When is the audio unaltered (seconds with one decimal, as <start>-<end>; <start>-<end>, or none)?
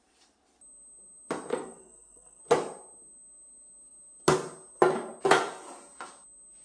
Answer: 0.0-1.5; 2.4-6.6